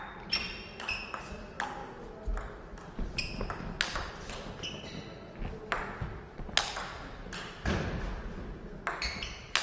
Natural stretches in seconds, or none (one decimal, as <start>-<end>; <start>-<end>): 0.0-9.6

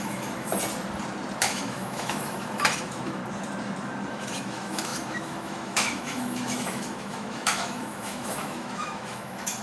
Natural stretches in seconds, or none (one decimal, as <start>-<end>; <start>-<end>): 0.5-1.4; 3.2-4.1

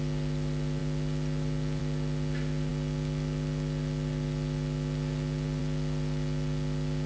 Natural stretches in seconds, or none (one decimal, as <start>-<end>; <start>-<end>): 0.0-7.1

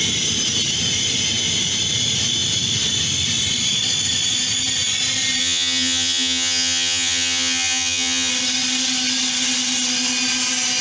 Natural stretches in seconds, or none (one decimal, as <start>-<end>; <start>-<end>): 0.0-5.4; 8.3-10.8